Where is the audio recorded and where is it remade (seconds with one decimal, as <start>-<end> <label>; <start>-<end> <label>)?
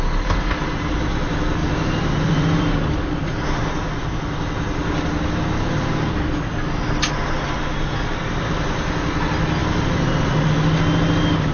0.0-1.6 recorded; 1.6-3.9 remade; 3.9-9.6 recorded; 9.6-10.5 remade; 10.5-11.5 recorded